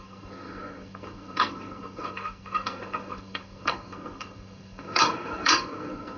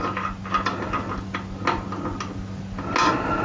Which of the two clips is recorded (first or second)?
second